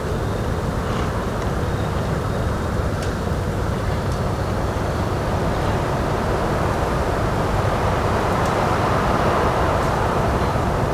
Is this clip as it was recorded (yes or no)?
no